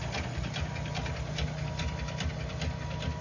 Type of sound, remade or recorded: recorded